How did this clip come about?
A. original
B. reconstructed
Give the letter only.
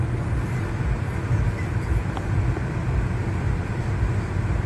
A